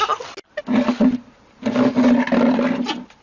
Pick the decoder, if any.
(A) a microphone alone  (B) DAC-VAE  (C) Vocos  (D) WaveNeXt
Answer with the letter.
A